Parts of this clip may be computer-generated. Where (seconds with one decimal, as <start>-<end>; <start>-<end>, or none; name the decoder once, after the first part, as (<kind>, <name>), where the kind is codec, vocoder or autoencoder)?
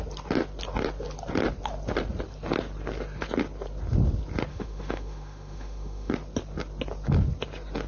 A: 4.5-6.1 (autoencoder, DAC-VAE)